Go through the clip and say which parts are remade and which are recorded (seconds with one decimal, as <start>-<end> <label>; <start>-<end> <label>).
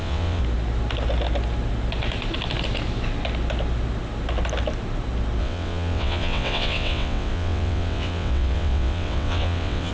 0.0-0.4 remade; 0.4-5.4 recorded; 5.4-9.9 remade